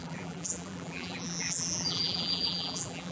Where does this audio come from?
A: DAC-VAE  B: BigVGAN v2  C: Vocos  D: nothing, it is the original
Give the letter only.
B